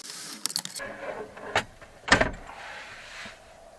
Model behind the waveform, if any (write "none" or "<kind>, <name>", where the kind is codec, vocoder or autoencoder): none